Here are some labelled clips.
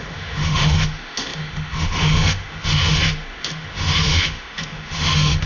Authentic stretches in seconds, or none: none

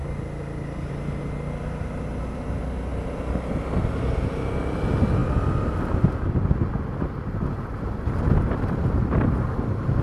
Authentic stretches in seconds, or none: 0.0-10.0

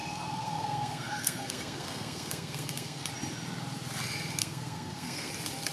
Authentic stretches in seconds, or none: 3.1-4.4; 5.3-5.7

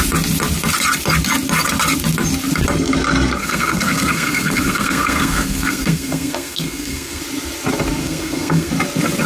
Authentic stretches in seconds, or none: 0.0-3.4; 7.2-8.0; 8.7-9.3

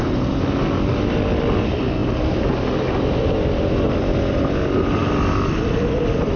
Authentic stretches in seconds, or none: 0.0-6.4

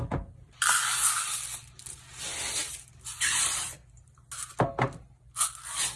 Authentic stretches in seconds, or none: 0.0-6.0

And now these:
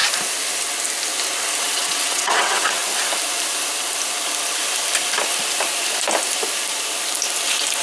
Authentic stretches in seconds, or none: 0.0-1.6; 2.8-7.8